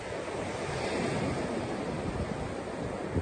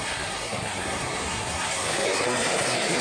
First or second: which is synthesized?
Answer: second